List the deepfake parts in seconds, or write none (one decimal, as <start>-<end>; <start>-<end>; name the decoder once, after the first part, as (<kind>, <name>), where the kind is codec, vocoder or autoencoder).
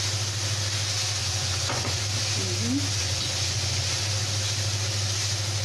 1.2-2.0 (vocoder, Vocos); 3.0-4.0